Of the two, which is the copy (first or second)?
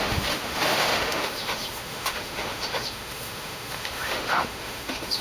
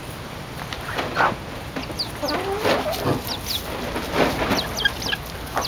first